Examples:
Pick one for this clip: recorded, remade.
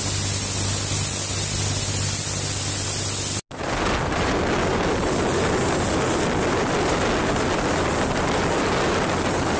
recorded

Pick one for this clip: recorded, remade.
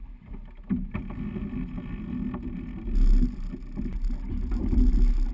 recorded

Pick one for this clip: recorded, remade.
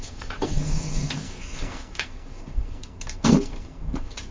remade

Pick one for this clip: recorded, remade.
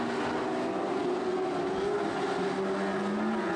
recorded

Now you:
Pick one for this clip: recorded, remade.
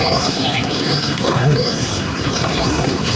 remade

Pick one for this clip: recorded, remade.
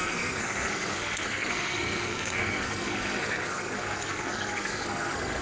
remade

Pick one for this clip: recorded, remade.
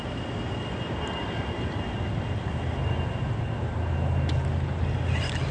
recorded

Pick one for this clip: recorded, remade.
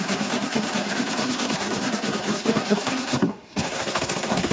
remade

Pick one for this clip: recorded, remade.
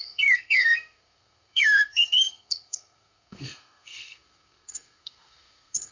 remade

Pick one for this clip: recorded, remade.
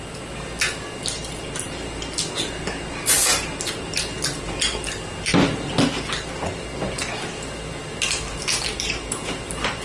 recorded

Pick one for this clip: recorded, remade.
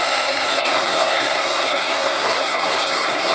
remade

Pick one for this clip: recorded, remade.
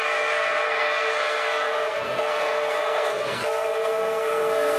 remade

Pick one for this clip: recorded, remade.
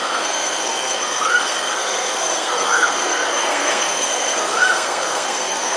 remade